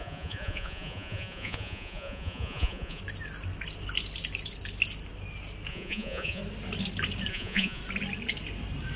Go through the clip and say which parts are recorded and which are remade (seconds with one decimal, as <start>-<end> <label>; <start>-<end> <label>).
0.0-3.0 remade; 3.0-5.7 recorded; 5.7-6.4 remade; 6.4-7.3 recorded; 7.3-7.8 remade; 7.8-9.0 recorded